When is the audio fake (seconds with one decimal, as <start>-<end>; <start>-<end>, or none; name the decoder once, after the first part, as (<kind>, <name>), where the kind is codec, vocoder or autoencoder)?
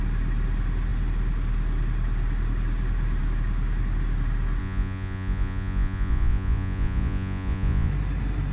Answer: 4.6-7.9 (vocoder, Vocos)